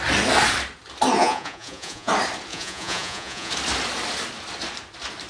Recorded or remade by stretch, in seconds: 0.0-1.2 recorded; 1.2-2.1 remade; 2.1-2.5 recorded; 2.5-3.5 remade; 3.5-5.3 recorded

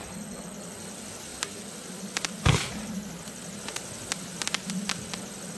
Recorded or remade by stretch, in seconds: 0.0-5.6 recorded

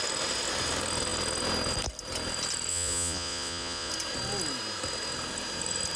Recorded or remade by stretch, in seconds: 0.0-2.7 recorded; 2.7-3.9 remade; 3.9-6.0 recorded

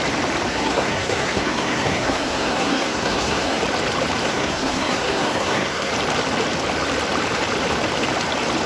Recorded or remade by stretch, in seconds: 0.0-0.5 recorded; 0.5-3.6 remade; 3.6-4.2 recorded; 4.2-5.9 remade; 5.9-8.7 recorded